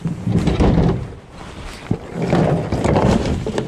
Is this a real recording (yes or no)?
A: yes